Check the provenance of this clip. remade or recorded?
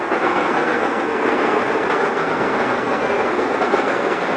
remade